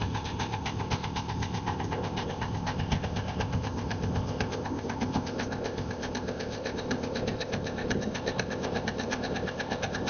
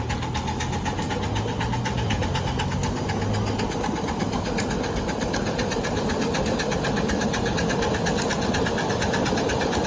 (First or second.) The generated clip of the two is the first